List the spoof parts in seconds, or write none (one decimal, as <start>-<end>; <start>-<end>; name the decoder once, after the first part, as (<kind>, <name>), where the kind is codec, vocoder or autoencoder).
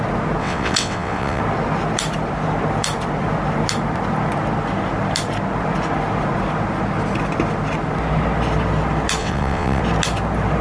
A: 0.4-1.4 (vocoder, WaveNeXt); 9.2-9.8